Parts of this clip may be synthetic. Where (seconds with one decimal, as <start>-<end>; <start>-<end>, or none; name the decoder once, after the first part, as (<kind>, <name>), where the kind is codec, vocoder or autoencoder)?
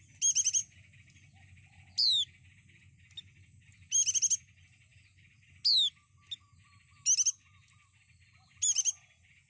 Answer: none